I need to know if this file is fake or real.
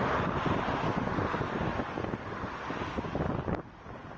real